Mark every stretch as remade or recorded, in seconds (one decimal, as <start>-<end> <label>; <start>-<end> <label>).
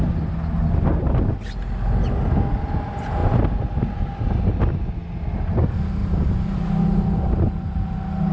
0.0-6.0 recorded; 6.0-6.7 remade; 6.7-8.3 recorded